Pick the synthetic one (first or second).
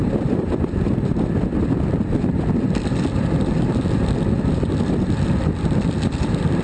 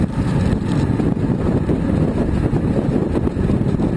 first